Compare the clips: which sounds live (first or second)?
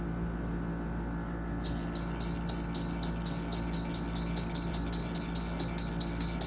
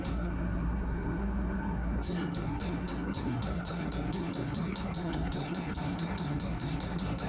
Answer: first